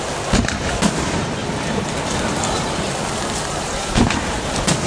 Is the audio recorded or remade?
remade